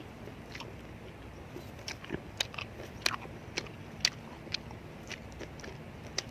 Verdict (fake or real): real